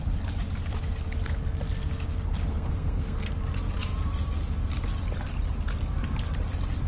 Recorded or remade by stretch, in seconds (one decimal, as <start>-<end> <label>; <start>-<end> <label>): 0.0-2.5 recorded; 2.5-3.3 remade; 3.3-6.9 recorded